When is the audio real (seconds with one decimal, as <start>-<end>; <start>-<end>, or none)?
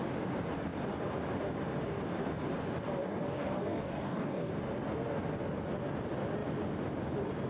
0.0-3.0; 4.5-7.5